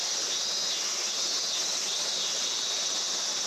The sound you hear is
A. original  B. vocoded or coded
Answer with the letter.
A